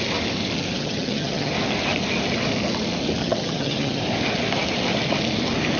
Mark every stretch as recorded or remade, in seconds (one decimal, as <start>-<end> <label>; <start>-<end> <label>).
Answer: 0.0-0.8 recorded; 0.8-1.5 remade; 1.5-3.2 recorded; 3.2-4.0 remade; 4.0-5.8 recorded